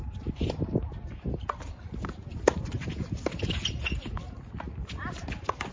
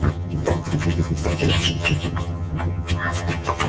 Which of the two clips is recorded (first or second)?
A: first